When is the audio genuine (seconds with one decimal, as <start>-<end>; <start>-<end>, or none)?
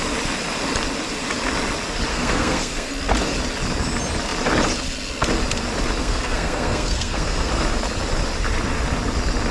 0.0-2.1; 2.9-6.0; 7.5-9.5